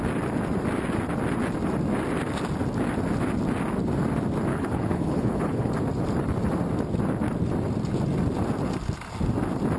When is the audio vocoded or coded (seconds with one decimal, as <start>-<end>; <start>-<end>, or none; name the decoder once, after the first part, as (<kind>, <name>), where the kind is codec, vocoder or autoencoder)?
4.5-5.7 (codec, HILCodec)